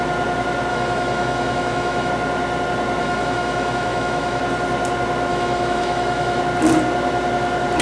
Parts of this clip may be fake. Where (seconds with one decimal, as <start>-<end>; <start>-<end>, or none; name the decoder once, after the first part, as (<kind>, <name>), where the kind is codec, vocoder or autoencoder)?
0.7-2.1 (autoencoder, DAC-VAE); 3.0-4.4; 5.3-6.4